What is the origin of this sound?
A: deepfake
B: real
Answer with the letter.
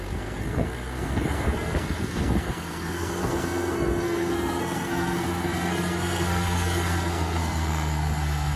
A